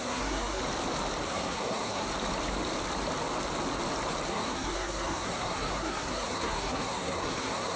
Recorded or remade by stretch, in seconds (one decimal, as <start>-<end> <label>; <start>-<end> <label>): 0.0-0.6 remade; 0.6-1.3 recorded; 1.3-2.1 remade; 2.1-4.3 recorded; 4.3-7.8 remade